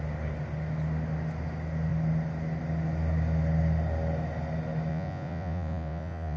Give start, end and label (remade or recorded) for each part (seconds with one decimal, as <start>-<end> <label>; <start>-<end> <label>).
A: 0.0-4.9 recorded; 4.9-6.4 remade